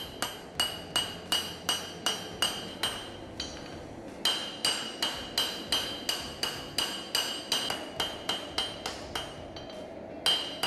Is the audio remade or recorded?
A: recorded